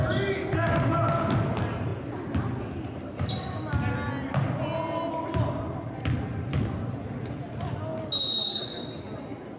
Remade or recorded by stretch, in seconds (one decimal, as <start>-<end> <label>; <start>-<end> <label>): 0.0-9.6 recorded